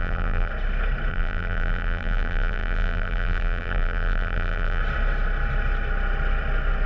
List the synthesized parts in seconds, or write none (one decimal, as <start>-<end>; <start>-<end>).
0.0-0.5; 1.1-4.8